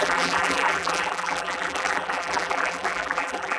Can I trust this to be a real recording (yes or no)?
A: no